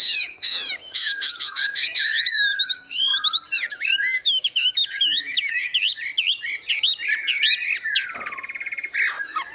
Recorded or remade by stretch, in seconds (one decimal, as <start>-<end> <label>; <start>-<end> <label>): 0.0-3.1 remade; 3.1-3.7 recorded; 3.7-5.7 remade; 5.7-9.5 recorded